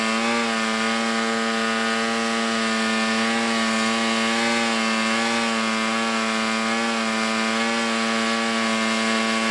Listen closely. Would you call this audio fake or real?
real